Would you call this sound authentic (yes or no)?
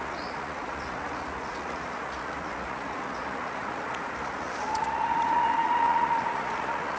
no